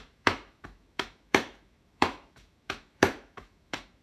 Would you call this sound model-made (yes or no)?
yes